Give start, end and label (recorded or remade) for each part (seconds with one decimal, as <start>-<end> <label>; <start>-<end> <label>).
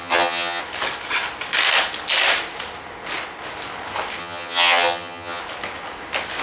0.0-0.6 remade; 0.6-4.2 recorded; 4.2-5.4 remade; 5.4-6.4 recorded